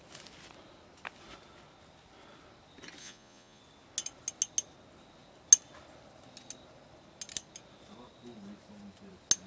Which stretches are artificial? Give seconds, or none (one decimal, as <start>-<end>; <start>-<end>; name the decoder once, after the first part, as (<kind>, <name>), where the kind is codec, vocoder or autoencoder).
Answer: 3.0-3.6 (vocoder, Vocos)